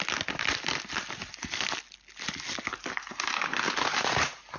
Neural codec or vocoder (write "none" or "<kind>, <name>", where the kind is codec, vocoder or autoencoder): none